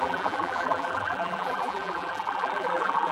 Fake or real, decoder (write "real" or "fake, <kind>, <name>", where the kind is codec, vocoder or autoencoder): fake, vocoder, BigVGAN v2